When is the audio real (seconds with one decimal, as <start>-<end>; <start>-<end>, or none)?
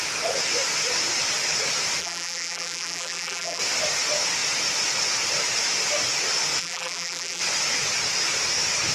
0.0-2.0; 3.6-6.6; 7.4-8.9